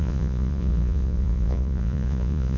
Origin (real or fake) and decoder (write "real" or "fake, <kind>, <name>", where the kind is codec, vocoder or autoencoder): fake, vocoder, Vocos